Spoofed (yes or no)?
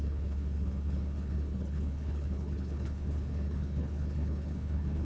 yes